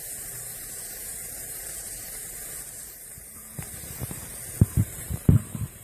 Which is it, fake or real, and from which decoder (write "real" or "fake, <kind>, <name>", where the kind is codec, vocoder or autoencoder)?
fake, vocoder, BigVGAN v2